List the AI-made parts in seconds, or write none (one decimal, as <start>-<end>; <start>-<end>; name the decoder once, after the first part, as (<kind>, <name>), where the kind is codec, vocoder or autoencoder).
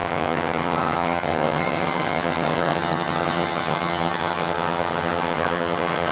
0.0-6.1 (vocoder, HiFi-GAN)